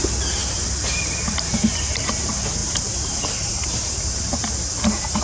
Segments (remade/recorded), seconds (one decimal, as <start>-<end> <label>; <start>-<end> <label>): 0.0-0.4 recorded; 0.4-2.1 remade; 2.1-2.6 recorded; 2.6-3.9 remade; 3.9-5.2 recorded